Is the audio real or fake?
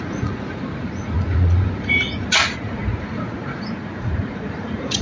fake